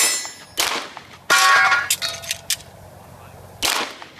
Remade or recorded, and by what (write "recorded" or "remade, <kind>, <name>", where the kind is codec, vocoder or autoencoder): recorded